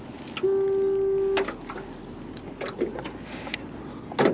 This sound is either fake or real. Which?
real